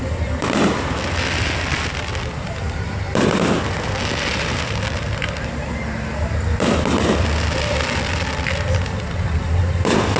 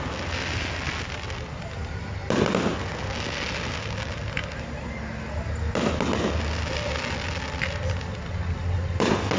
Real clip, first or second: second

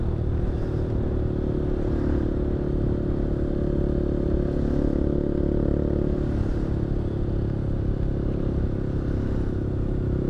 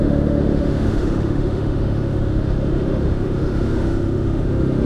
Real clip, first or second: first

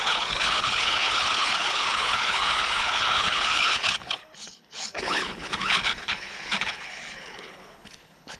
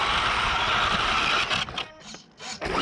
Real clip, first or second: second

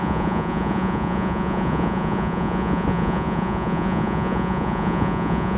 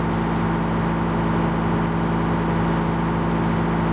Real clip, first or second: second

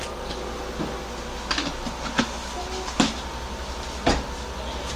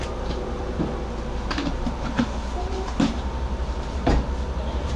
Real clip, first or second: first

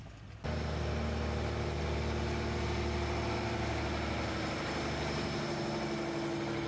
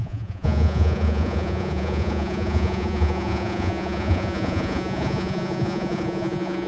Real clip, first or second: first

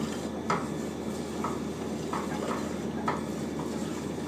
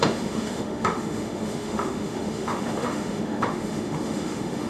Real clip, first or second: first